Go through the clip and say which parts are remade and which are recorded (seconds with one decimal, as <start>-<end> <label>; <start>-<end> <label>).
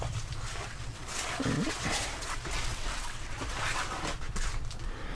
0.0-2.7 recorded; 2.7-3.3 remade; 3.3-5.1 recorded